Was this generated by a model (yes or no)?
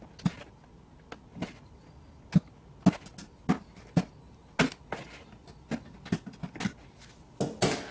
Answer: no